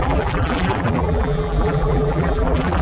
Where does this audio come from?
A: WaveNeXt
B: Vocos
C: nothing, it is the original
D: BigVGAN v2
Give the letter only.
D